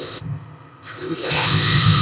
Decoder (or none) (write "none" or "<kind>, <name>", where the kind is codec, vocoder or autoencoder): codec, ZipCodec